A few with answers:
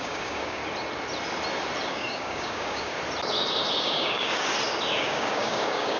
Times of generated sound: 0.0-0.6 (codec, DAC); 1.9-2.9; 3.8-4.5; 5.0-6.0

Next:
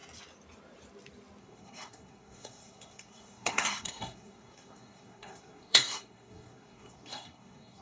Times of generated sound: 1.4-7.8 (codec, SNAC)